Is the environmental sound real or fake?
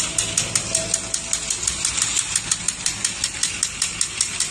real